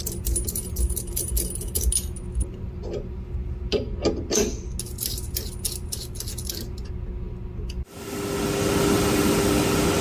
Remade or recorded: recorded